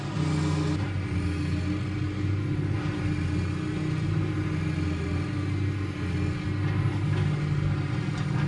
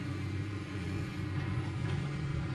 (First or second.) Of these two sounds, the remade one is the second